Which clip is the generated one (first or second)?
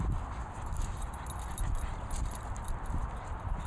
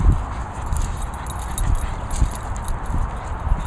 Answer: first